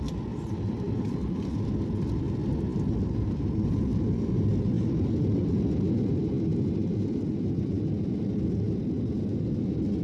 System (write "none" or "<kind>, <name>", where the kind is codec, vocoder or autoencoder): none